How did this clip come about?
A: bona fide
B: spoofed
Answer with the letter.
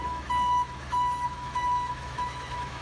B